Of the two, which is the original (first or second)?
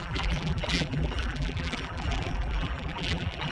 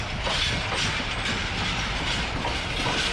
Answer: second